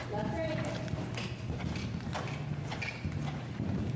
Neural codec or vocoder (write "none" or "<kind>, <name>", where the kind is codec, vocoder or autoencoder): none